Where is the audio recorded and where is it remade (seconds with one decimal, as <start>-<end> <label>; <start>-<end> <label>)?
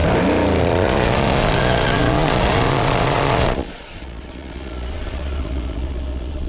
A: 0.0-0.6 recorded; 0.6-6.5 remade